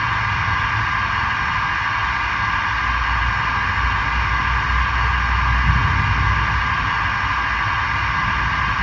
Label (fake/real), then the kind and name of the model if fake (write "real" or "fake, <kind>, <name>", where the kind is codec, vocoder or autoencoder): real